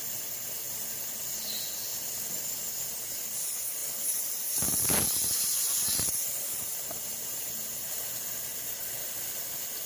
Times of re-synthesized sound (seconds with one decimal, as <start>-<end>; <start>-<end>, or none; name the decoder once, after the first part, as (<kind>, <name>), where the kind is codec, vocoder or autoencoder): 3.8-9.0 (vocoder, BigVGAN v2)